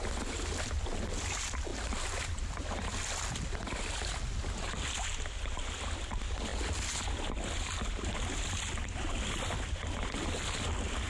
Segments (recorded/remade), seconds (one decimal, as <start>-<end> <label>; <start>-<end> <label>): 0.0-11.1 recorded